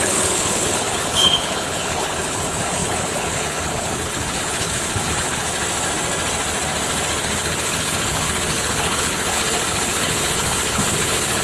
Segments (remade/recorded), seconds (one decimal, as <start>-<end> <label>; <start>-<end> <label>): 0.0-5.5 remade; 5.5-7.2 recorded; 7.2-11.4 remade